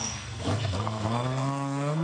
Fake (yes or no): yes